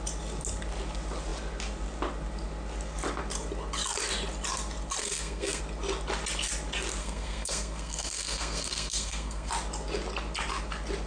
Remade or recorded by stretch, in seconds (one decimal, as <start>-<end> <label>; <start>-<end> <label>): 0.0-5.0 recorded; 5.0-5.6 remade; 5.6-7.0 recorded; 7.0-9.5 remade; 9.5-11.1 recorded